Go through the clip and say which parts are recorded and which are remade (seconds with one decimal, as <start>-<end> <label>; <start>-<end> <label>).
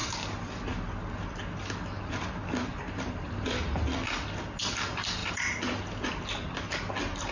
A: 0.0-0.5 remade; 0.5-2.7 recorded; 2.7-3.9 remade; 3.9-7.3 recorded